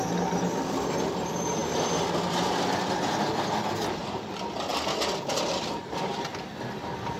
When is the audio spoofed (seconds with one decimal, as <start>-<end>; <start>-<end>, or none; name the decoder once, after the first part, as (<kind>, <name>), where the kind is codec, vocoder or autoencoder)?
none